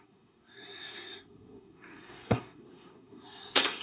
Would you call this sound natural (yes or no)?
no